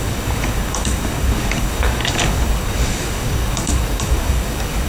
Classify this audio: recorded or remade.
remade